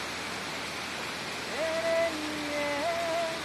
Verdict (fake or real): real